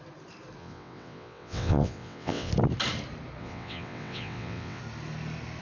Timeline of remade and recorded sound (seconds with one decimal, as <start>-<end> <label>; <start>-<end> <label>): 0.0-0.6 recorded; 0.6-2.5 remade; 2.5-3.4 recorded; 3.4-4.8 remade; 4.8-5.6 recorded